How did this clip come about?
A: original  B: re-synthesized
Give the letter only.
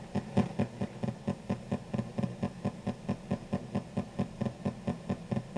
A